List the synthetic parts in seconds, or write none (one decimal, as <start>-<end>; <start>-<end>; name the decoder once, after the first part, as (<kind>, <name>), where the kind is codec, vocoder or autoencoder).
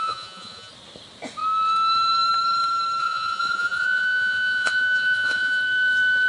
0.0-0.7 (vocoder, Vocos); 3.0-5.6